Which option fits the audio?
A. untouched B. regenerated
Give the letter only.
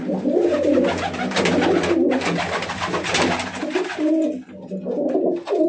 A